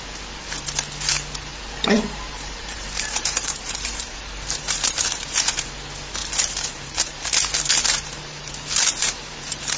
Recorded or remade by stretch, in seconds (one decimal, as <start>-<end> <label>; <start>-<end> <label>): 0.0-1.5 recorded; 1.5-5.7 remade; 5.7-6.2 recorded; 6.2-9.8 remade